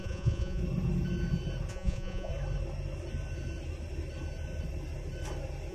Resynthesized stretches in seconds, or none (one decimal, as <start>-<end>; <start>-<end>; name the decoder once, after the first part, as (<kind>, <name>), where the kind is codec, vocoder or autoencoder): 0.0-0.6 (vocoder, Vocos); 1.7-2.3